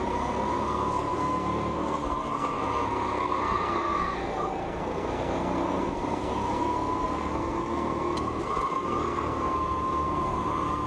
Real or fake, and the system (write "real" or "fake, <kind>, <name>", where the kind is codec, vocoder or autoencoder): fake, codec, SNAC